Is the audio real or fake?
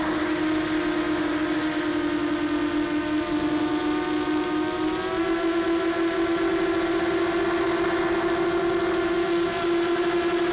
real